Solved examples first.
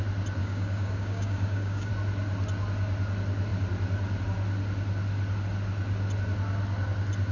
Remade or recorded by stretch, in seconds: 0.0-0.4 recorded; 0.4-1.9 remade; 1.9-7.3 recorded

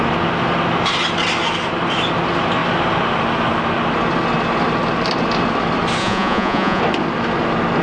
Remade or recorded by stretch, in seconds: 0.0-6.0 recorded; 6.0-6.8 remade; 6.8-7.8 recorded

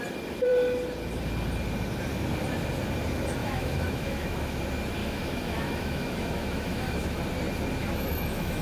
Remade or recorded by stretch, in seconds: 0.0-3.4 recorded; 3.4-4.6 remade; 4.6-5.0 recorded; 5.0-7.2 remade; 7.2-7.8 recorded; 7.8-8.6 remade

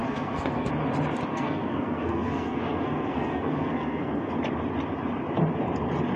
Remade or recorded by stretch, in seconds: 0.0-0.7 remade; 0.7-1.3 recorded; 1.3-4.3 remade; 4.3-6.2 recorded